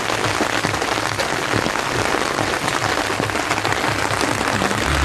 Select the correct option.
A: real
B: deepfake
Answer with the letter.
A